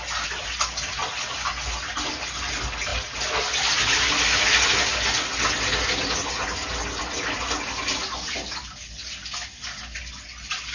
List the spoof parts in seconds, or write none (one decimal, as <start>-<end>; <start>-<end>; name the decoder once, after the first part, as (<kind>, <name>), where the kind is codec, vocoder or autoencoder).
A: none

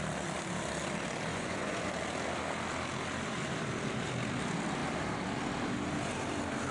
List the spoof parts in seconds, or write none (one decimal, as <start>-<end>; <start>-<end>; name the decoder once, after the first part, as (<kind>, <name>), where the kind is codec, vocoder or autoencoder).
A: 1.3-1.9 (vocoder, Vocos)

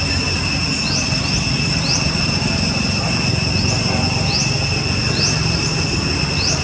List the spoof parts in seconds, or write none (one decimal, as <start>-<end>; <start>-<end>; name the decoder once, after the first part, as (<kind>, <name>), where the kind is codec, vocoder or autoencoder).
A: 0.0-3.3 (vocoder, BigVGAN v2); 5.1-6.6

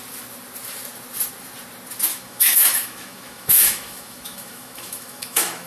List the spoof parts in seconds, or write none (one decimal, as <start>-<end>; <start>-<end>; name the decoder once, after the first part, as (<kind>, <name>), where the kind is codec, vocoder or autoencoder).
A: 2.1-5.7 (autoencoder, DAC-VAE)

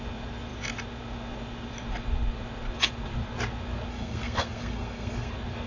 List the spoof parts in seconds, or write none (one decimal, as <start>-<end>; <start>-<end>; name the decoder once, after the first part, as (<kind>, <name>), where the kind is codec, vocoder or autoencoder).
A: 3.9-5.3 (codec, SNAC)

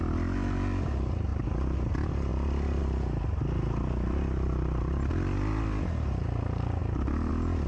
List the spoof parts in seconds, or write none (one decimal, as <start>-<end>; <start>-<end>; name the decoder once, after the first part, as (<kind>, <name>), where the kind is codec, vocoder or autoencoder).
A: none

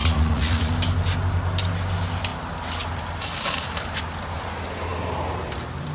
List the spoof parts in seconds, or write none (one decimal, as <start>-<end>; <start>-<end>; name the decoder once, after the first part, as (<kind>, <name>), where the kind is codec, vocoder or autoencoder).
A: 0.0-0.7 (vocoder, Vocos)